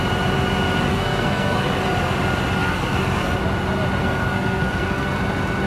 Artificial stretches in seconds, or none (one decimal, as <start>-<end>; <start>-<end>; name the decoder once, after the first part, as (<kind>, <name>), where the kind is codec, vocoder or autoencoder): 0.9-1.6 (codec, SNAC); 2.6-3.4; 4.0-5.1